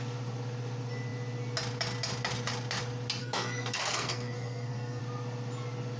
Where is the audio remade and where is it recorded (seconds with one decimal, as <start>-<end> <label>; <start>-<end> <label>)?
0.0-3.2 recorded; 3.2-5.0 remade; 5.0-6.0 recorded